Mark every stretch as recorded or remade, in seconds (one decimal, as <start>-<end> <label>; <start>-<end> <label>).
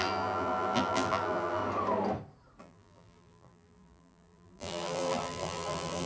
0.0-1.6 remade; 1.6-2.6 recorded; 2.6-6.1 remade